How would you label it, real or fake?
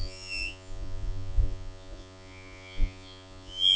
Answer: fake